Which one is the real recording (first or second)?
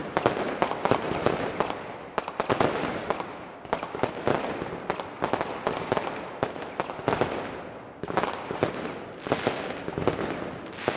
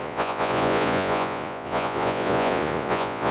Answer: first